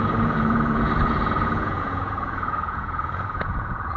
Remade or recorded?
remade